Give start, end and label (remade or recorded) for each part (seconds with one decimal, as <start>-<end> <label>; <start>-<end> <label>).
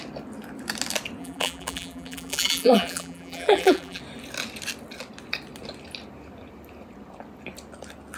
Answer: 0.0-1.2 recorded; 1.2-4.0 remade; 4.0-8.2 recorded